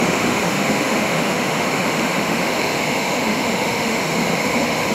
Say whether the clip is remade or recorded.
remade